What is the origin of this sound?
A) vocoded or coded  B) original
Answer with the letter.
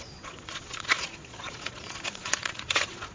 A